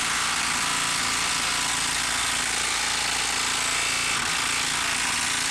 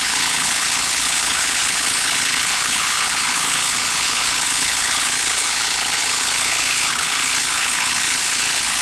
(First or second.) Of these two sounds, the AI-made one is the second